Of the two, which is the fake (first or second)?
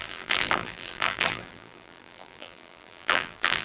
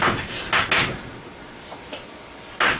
first